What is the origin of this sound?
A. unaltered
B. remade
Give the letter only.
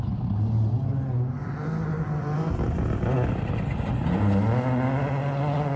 A